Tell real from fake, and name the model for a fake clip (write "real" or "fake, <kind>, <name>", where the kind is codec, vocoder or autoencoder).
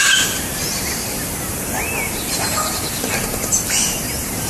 real